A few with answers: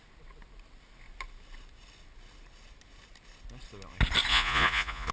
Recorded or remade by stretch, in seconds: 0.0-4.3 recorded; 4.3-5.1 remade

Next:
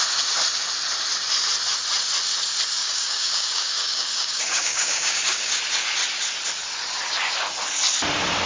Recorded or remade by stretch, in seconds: 0.0-2.8 recorded; 2.8-5.6 remade; 5.6-8.5 recorded

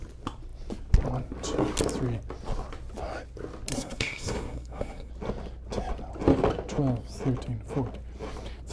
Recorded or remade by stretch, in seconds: 0.0-3.7 recorded; 3.7-5.1 remade; 5.1-8.7 recorded

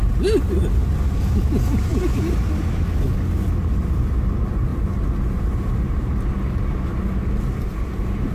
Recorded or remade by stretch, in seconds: 0.0-8.3 recorded

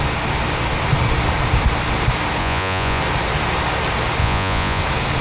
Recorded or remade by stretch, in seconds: 0.0-2.4 recorded; 2.4-3.0 remade; 3.0-4.2 recorded; 4.2-4.8 remade; 4.8-5.2 recorded

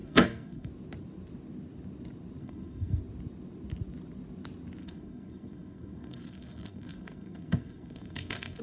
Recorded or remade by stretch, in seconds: 0.0-0.7 remade; 0.7-2.4 recorded; 2.4-3.0 remade; 3.0-4.8 recorded; 4.8-8.6 remade